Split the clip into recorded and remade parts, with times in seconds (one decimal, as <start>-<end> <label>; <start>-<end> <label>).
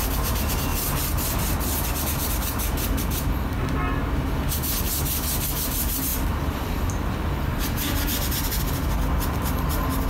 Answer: 0.0-6.1 recorded; 6.1-8.6 remade; 8.6-10.1 recorded